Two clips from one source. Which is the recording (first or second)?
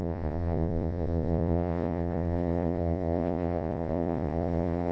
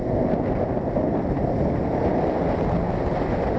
second